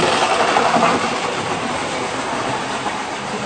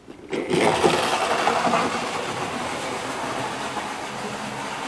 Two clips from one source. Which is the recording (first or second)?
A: second